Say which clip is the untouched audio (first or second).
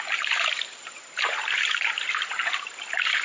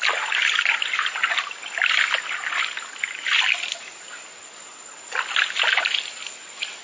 second